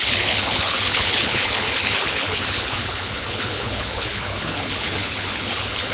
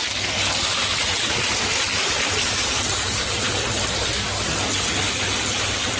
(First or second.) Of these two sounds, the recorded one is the second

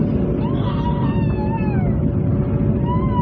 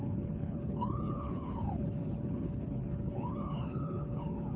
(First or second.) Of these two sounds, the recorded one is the first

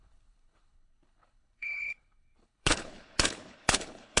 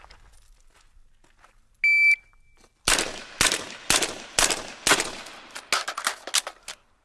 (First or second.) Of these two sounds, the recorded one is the second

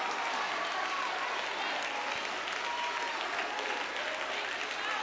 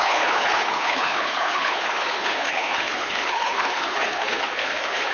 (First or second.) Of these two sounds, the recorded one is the first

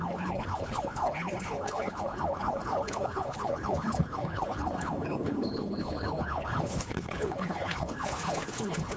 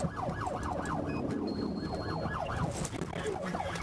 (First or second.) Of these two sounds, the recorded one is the second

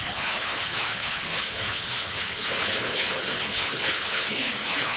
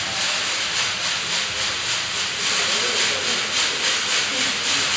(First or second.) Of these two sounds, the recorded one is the second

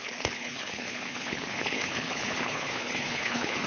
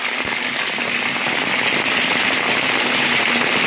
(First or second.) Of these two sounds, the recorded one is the second